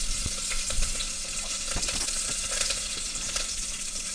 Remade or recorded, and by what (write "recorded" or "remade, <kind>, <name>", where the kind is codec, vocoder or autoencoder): remade, vocoder, Vocos